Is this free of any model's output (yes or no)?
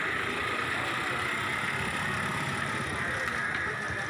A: yes